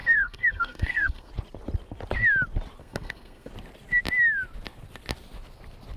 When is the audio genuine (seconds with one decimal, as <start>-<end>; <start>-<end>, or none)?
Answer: 1.3-2.8; 3.5-6.0